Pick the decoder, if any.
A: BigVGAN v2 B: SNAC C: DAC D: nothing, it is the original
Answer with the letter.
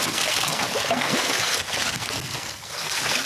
B